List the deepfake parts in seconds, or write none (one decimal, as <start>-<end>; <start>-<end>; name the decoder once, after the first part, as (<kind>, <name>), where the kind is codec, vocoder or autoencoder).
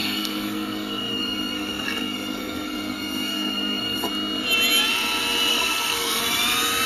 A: 0.0-4.1 (codec, SNAC); 5.5-6.2